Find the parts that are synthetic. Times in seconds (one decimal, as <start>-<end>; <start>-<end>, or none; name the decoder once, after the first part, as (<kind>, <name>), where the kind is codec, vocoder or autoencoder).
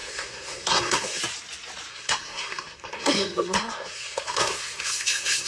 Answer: 0.0-1.2 (codec, SNAC); 1.9-5.5